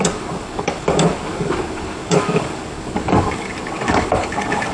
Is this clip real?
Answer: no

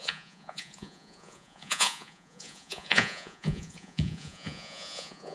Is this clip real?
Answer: no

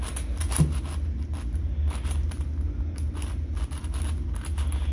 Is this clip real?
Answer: yes